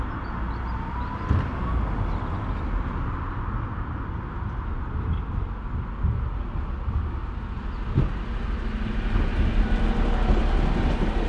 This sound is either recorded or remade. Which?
recorded